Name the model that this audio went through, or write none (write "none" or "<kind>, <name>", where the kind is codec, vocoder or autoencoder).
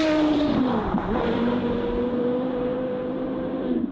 vocoder, BigVGAN v2